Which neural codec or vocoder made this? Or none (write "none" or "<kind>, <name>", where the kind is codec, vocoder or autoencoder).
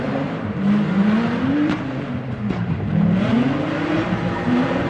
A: vocoder, BigVGAN v2